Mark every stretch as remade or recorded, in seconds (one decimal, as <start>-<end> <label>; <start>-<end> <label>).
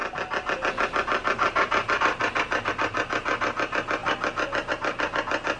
0.0-5.6 recorded